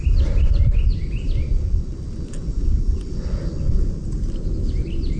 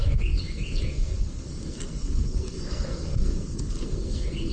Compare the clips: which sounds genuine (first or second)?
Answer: first